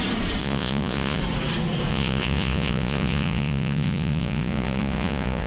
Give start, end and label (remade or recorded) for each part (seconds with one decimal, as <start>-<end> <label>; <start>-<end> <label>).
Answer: 0.0-0.4 recorded; 0.4-1.2 remade; 1.2-1.9 recorded; 1.9-5.5 remade